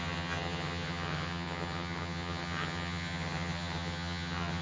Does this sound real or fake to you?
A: fake